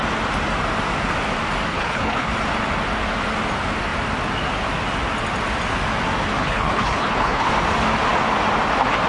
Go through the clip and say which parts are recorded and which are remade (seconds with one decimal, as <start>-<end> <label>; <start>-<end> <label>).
0.0-1.7 recorded; 1.7-2.3 remade; 2.3-6.4 recorded; 6.4-7.5 remade; 7.5-9.1 recorded